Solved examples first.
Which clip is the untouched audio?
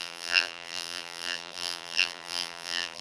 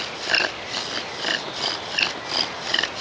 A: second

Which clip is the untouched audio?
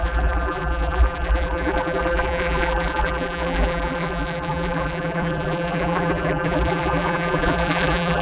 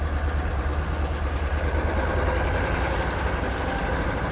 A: second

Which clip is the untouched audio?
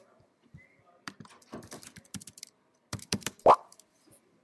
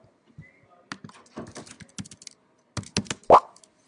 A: second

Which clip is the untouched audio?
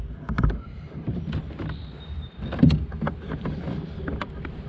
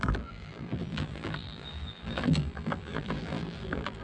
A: first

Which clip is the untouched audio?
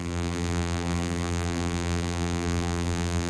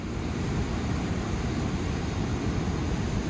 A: second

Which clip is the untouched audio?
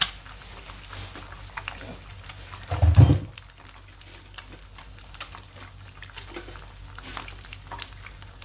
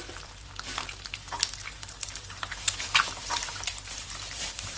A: first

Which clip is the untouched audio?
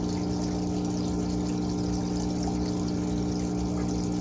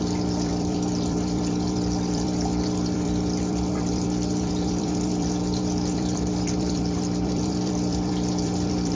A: first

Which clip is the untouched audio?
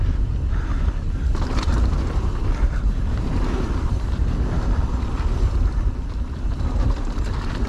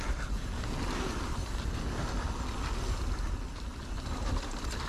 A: second